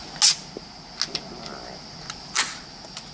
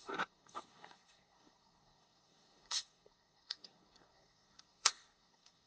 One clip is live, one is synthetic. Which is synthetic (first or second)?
second